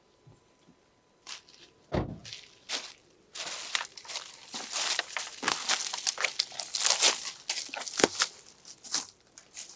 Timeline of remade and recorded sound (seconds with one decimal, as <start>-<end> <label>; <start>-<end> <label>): 0.0-2.2 recorded; 2.2-3.3 remade; 3.3-9.8 recorded